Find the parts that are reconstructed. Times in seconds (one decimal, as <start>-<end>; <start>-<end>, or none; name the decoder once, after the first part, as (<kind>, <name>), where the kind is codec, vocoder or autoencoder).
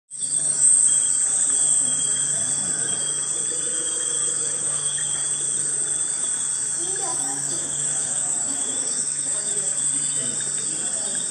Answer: 4.2-5.0 (codec, DAC); 7.1-9.8